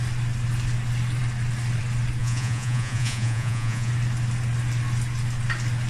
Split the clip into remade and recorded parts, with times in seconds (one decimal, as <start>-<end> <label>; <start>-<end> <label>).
0.0-2.2 recorded; 2.2-3.9 remade; 3.9-5.9 recorded